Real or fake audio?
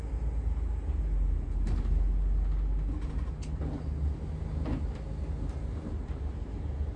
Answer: real